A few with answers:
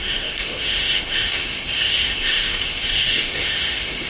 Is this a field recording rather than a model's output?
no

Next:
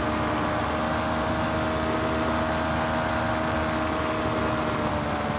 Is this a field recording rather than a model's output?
yes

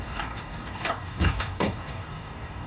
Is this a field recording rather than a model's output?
no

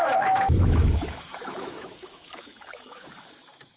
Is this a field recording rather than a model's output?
no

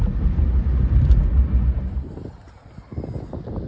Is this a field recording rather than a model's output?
yes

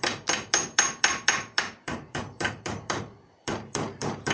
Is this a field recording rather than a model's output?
no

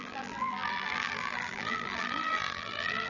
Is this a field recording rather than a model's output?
no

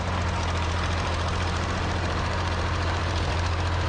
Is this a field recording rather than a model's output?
no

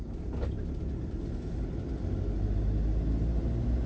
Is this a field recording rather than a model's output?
yes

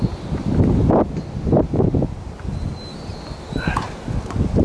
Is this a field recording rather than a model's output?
yes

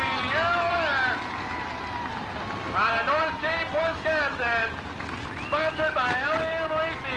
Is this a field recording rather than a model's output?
yes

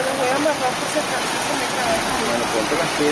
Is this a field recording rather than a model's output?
yes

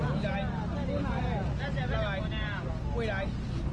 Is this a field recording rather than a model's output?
yes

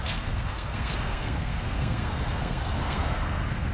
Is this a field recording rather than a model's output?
no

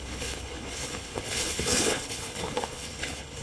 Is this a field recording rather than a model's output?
no